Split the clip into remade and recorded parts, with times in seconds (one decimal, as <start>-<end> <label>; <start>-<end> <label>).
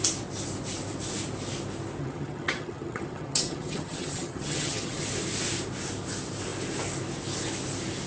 0.0-2.0 recorded; 2.0-5.0 remade; 5.0-8.1 recorded